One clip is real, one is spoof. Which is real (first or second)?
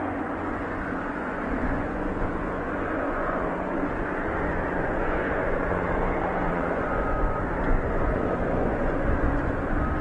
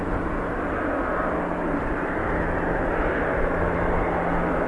second